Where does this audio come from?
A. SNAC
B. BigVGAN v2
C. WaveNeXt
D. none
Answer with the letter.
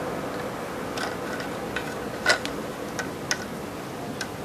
D